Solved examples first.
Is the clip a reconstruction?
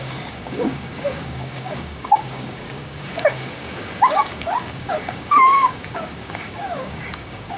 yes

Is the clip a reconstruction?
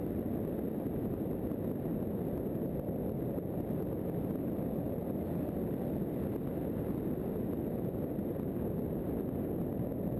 no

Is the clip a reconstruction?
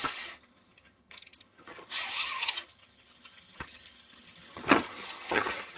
yes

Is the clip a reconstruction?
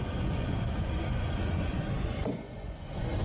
yes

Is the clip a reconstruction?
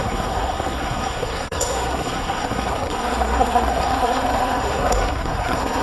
yes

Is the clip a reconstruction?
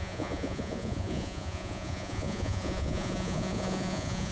yes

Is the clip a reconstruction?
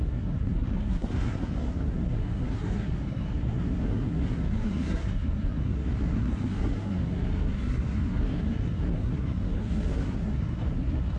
yes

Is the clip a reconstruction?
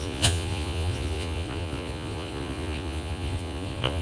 yes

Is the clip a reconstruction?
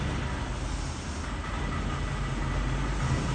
no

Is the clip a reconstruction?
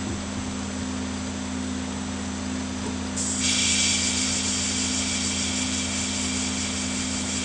no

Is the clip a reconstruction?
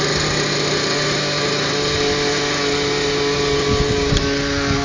no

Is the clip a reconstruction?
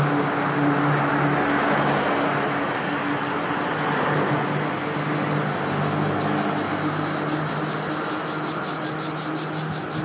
no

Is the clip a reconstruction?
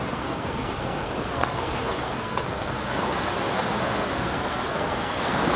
yes